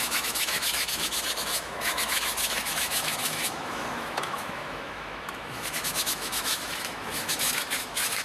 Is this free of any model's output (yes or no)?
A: no